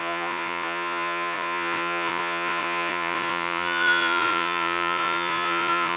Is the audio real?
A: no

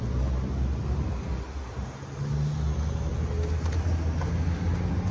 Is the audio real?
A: yes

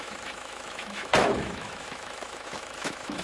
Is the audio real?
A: no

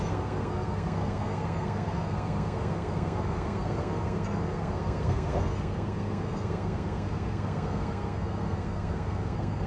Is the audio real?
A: no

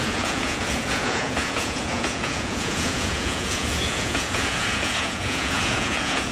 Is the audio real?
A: no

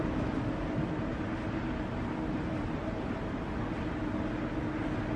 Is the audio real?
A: yes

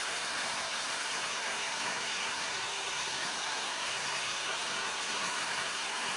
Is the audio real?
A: no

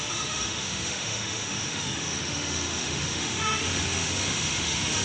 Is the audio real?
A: no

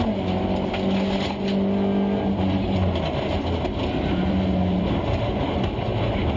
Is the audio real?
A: yes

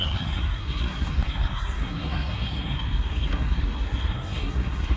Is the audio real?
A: no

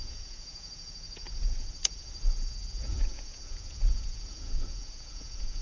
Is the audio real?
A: no